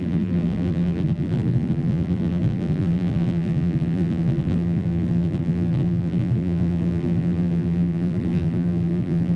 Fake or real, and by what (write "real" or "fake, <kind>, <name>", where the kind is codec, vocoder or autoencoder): fake, vocoder, BigVGAN v2